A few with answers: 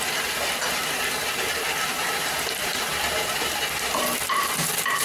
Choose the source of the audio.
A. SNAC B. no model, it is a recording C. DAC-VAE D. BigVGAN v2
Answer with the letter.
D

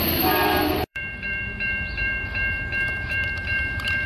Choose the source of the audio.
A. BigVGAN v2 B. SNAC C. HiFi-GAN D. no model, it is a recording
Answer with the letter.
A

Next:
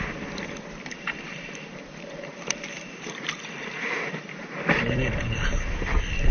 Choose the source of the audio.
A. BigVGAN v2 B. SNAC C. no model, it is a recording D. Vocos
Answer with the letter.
A